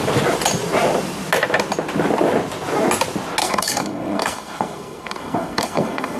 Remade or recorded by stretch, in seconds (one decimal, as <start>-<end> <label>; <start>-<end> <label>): 0.0-3.4 recorded; 3.4-6.2 remade